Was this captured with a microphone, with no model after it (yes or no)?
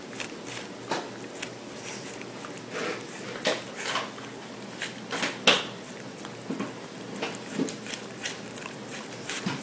yes